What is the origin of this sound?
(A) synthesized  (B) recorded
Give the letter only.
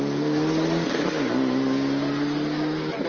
B